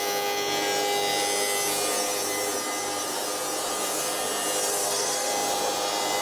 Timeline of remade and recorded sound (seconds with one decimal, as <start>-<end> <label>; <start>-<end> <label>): 0.0-4.7 recorded; 4.7-5.3 remade; 5.3-6.2 recorded